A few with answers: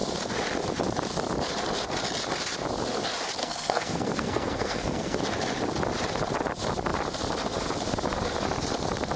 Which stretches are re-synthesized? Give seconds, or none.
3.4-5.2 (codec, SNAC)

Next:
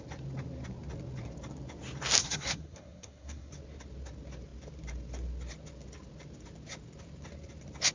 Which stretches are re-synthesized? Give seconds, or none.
2.2-3.5 (codec, SNAC)

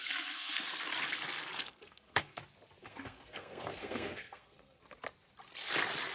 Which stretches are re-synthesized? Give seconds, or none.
0.0-0.6 (codec, SNAC); 1.6-2.4; 2.8-4.8